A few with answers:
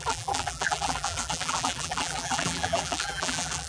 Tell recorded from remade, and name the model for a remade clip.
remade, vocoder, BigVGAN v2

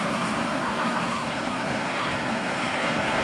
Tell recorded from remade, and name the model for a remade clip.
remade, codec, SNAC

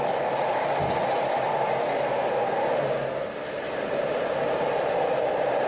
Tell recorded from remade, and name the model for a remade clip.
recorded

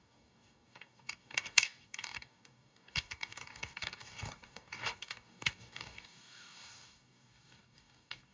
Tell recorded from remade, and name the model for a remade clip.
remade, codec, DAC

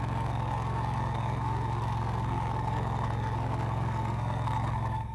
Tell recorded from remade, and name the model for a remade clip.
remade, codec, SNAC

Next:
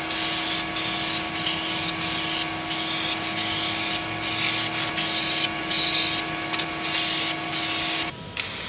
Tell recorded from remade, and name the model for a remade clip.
recorded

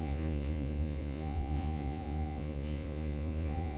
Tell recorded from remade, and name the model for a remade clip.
remade, vocoder, Vocos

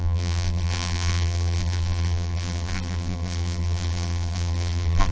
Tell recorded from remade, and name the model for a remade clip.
remade, vocoder, BigVGAN v2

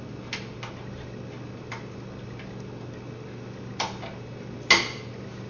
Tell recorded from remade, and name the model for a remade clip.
recorded